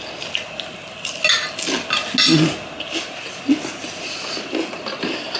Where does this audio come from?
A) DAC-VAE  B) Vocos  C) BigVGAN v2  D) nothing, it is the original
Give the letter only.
D